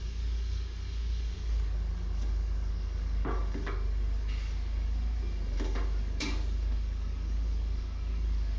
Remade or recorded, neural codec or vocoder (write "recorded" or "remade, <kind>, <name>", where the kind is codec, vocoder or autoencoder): remade, codec, DAC